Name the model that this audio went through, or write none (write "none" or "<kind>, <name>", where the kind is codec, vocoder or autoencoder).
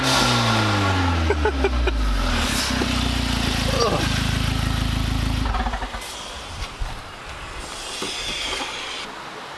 none